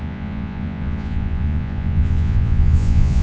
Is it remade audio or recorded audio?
remade